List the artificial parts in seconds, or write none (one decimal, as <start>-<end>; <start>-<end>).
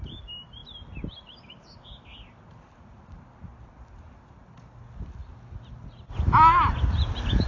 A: none